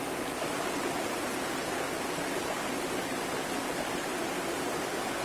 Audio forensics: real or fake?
real